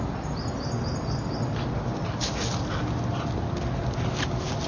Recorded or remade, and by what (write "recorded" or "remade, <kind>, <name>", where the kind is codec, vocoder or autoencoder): recorded